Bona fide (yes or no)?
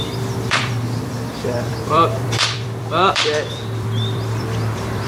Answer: no